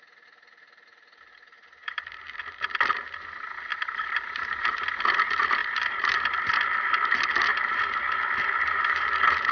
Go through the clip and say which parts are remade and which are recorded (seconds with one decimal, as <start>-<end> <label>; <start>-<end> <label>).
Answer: 0.0-1.8 recorded; 1.8-2.4 remade; 2.4-3.7 recorded; 3.7-4.8 remade; 4.8-5.6 recorded; 5.6-6.2 remade; 6.2-9.5 recorded